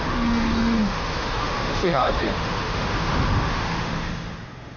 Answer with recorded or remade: remade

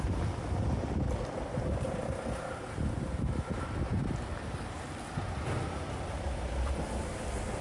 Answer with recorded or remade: recorded